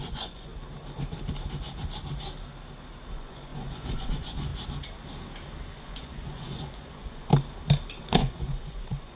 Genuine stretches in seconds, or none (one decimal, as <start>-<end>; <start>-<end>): 0.5-3.1; 4.5-5.8; 7.3-8.0